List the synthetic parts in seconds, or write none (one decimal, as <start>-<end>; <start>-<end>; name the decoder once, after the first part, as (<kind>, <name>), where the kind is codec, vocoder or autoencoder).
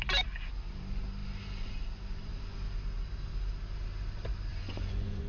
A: 4.5-5.3 (vocoder, Vocos)